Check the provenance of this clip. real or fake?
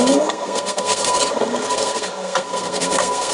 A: fake